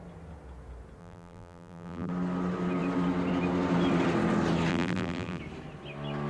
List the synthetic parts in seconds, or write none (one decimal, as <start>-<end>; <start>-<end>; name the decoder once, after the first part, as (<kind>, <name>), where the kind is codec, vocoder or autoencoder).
1.0-2.1 (vocoder, BigVGAN v2); 4.7-5.4